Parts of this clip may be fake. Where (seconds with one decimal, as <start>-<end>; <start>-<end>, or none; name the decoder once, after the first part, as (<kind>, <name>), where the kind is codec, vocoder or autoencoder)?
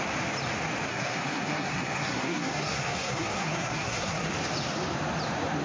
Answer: 0.9-4.3 (codec, SNAC)